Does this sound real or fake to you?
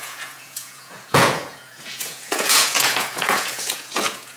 fake